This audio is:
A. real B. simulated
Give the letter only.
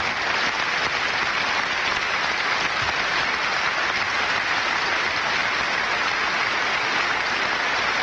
A